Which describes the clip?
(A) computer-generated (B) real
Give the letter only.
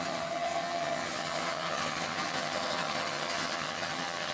A